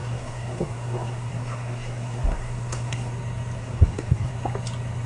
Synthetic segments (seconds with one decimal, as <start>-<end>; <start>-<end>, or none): 0.0-3.1; 3.6-4.3